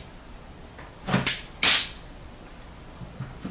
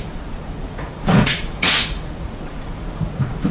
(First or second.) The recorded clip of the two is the first